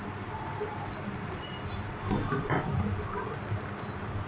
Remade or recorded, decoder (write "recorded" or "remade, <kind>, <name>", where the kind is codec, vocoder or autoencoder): remade, vocoder, BigVGAN v2